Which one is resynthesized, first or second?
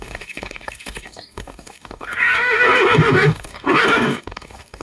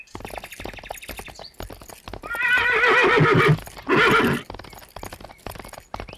first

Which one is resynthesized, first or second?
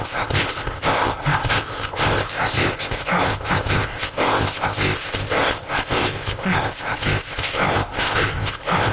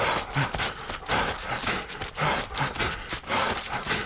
first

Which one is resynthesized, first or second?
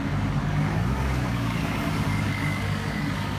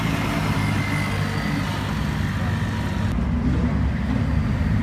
first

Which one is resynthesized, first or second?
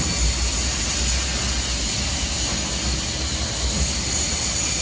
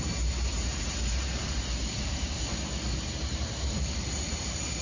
second